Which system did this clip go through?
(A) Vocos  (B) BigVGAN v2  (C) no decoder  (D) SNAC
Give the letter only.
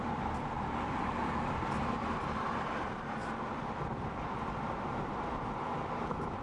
B